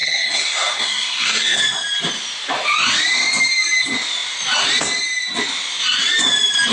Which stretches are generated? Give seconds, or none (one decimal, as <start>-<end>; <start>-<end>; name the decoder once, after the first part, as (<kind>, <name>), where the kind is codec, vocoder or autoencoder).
0.0-1.6 (codec, SNAC)